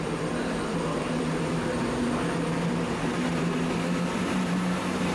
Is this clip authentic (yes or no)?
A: no